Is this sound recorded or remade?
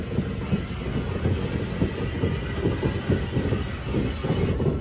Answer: recorded